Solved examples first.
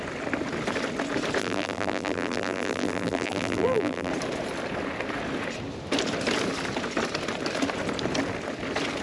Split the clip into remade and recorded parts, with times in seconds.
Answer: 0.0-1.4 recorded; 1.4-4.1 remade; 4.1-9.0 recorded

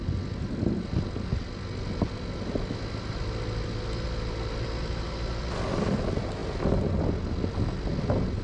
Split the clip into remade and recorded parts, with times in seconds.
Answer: 0.0-8.4 recorded